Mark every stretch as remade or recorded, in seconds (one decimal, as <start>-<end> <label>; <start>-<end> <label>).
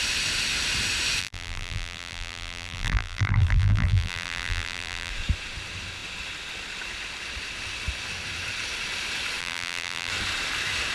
0.0-1.2 recorded; 1.2-5.1 remade; 5.1-9.4 recorded; 9.4-10.1 remade; 10.1-10.9 recorded